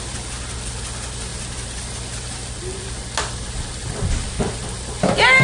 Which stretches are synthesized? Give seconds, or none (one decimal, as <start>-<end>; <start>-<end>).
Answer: none